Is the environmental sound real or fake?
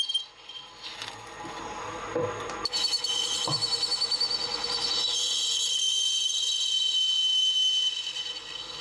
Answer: real